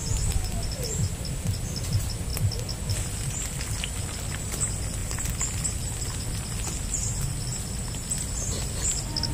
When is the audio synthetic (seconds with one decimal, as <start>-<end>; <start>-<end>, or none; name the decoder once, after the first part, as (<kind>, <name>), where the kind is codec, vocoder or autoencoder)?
5.0-5.7 (vocoder, BigVGAN v2)